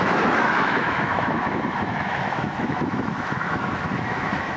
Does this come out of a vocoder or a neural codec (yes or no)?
yes